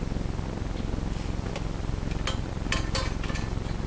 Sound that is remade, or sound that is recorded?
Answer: recorded